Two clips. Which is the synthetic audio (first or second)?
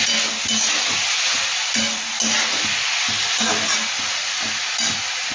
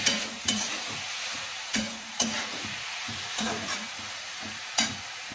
second